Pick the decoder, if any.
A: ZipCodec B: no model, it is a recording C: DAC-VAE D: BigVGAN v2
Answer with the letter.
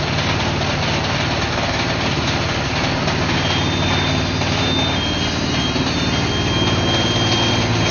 B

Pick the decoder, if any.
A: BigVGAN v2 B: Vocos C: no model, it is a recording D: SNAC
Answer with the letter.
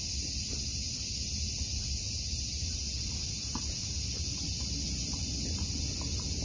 C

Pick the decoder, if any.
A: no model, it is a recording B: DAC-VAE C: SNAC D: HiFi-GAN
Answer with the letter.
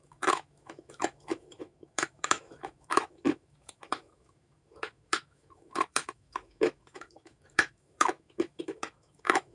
B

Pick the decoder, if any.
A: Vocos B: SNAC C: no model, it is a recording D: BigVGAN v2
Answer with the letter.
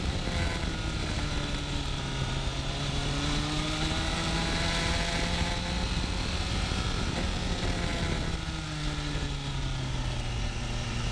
C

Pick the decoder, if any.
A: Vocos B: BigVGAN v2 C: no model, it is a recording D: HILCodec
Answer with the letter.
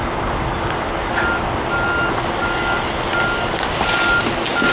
C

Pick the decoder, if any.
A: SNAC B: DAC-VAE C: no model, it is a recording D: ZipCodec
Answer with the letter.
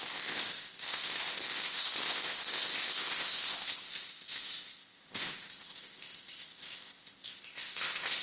D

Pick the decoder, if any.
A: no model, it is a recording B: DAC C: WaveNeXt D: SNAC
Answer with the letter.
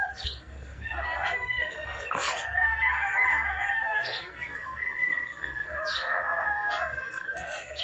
D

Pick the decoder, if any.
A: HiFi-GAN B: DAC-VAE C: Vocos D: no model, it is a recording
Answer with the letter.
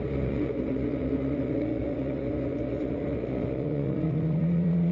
C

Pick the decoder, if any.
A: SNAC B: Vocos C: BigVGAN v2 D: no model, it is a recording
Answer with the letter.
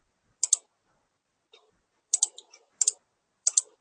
C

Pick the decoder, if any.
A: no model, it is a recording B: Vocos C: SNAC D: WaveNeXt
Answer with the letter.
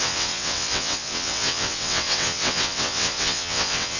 D